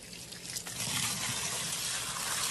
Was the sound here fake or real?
real